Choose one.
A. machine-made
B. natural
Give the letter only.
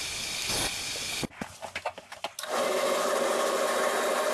B